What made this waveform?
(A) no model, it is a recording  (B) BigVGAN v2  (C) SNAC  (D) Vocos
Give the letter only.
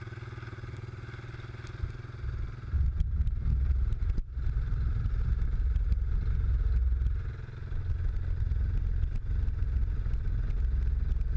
A